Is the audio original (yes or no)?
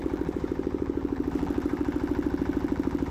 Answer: no